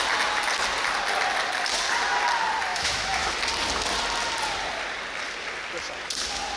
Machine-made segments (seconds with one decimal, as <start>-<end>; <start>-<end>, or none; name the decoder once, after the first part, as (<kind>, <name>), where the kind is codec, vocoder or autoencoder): 2.7-3.3 (autoencoder, DAC-VAE)